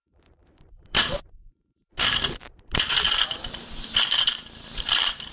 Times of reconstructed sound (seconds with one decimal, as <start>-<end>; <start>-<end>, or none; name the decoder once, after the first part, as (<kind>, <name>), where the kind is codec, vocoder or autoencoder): 0.6-1.5 (vocoder, BigVGAN v2); 2.4-5.3